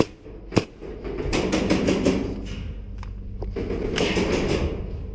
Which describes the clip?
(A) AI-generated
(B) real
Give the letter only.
B